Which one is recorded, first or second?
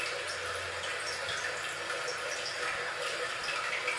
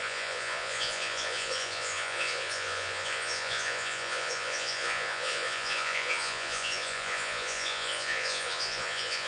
first